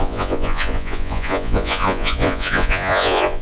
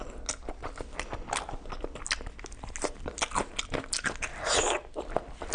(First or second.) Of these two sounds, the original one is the second